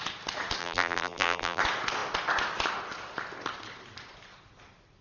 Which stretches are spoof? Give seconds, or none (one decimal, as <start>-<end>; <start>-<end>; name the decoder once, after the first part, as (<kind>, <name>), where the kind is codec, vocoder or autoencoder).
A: 0.6-1.6 (vocoder, BigVGAN v2)